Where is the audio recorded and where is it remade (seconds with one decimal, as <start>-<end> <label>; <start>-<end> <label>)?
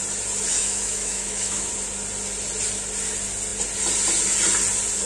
0.0-0.5 recorded; 0.5-1.7 remade; 1.7-5.1 recorded